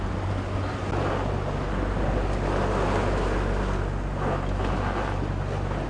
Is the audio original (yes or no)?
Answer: yes